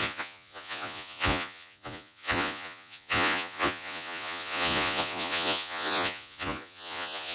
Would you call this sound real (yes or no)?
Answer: no